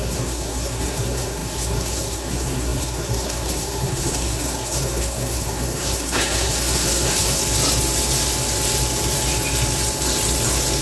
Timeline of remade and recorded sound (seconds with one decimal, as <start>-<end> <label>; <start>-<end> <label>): 0.0-7.4 remade; 7.4-10.8 recorded